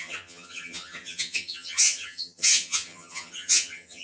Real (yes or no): no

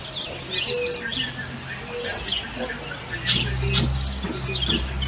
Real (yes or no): yes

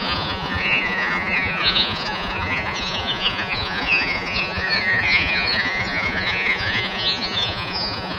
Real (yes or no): no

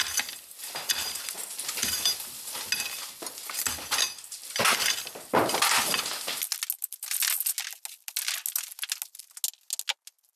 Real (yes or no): yes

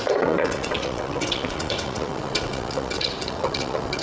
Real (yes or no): no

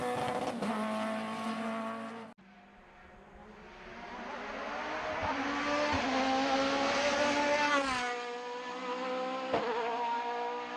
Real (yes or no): yes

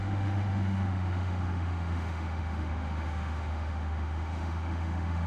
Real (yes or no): no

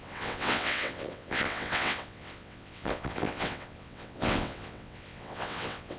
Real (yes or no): no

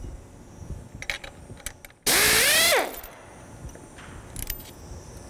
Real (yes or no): yes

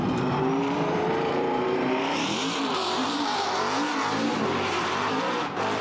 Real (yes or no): no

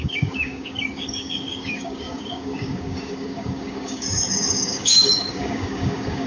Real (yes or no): no